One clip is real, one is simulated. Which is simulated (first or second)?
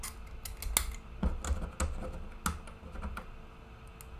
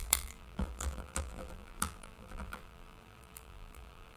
second